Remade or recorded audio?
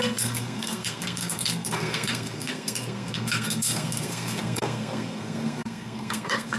remade